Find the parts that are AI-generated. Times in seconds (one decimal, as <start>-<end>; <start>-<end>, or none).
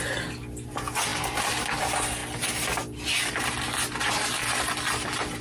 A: none